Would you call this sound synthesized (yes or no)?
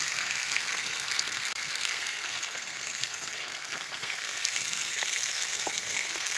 yes